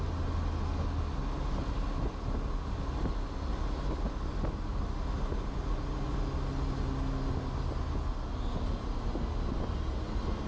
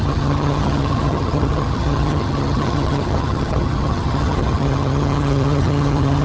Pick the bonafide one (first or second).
first